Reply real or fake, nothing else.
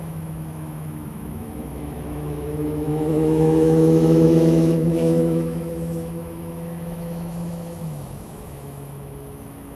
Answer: fake